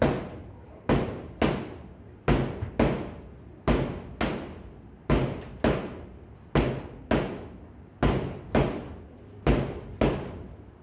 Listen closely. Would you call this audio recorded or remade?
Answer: recorded